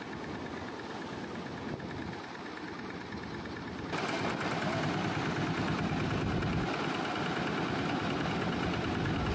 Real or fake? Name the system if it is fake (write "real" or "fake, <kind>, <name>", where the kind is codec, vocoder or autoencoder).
real